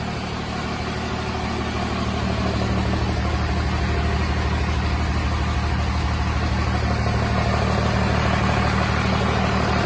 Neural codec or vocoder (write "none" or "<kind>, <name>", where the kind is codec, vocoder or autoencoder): none